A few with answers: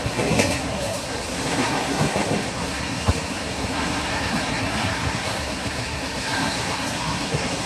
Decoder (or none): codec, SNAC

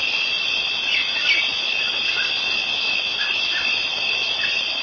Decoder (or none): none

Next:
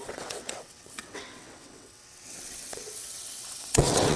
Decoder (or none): vocoder, WaveNeXt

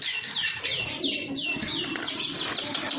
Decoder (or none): none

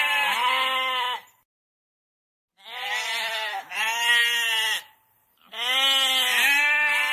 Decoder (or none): none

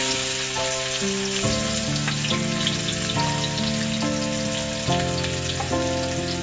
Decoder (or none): none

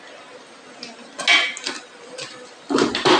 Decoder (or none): none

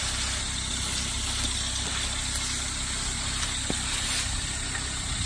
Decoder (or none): none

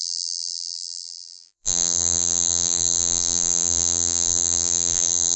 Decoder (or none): vocoder, BigVGAN v2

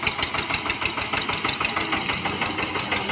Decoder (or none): none